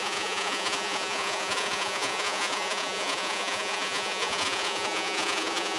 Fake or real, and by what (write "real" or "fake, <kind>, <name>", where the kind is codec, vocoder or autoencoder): fake, vocoder, Vocos